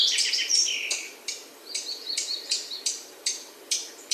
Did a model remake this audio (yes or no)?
yes